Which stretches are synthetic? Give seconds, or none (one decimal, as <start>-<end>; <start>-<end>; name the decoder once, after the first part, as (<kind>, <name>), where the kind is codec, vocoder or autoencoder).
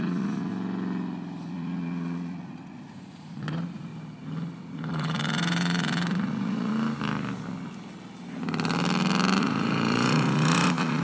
0.0-0.5 (vocoder, Vocos); 1.5-3.9; 4.6-6.7; 9.4-11.0